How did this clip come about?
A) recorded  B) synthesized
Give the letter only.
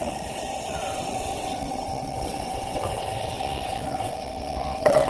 B